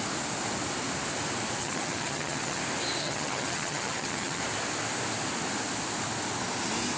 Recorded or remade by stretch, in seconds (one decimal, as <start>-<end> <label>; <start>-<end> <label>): 0.0-1.6 recorded; 1.6-2.6 remade; 2.6-3.0 recorded; 3.0-4.4 remade; 4.4-7.0 recorded